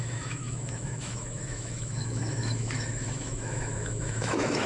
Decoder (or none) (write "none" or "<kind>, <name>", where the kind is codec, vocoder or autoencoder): autoencoder, DAC-VAE